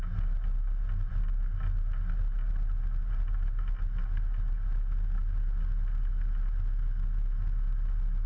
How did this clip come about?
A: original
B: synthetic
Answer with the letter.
A